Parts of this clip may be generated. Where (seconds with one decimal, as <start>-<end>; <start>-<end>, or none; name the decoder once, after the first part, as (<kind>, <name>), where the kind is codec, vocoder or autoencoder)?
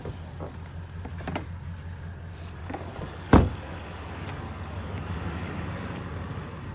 2.6-6.7 (codec, DAC)